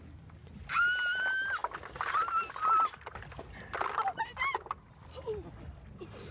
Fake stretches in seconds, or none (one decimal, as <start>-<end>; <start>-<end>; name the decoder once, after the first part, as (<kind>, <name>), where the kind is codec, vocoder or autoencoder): none